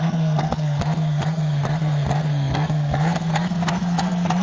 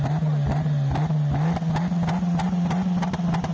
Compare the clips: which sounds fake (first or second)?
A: first